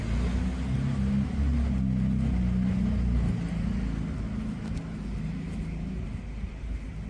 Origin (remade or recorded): recorded